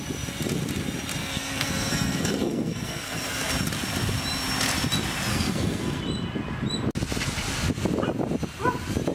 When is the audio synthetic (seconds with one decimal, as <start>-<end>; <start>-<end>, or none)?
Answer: 1.2-3.5; 5.3-6.0

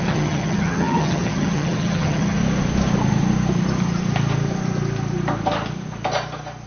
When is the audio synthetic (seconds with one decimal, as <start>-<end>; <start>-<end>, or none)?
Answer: 0.0-2.4

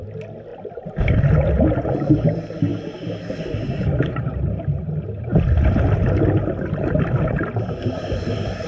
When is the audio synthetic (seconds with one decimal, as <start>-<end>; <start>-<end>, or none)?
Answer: none

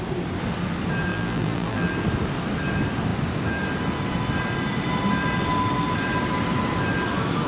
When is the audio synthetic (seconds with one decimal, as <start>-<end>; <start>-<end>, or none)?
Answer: 1.1-1.9

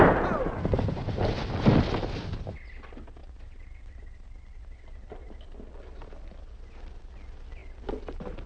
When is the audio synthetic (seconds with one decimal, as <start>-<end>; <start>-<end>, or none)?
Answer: none

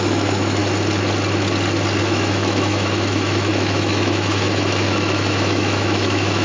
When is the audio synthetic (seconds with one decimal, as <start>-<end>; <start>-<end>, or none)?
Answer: 0.0-0.6; 2.0-6.4

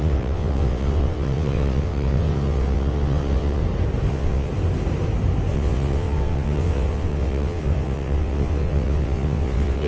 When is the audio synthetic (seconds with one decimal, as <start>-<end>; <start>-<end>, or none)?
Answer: 0.0-3.6; 4.1-4.5; 5.5-9.9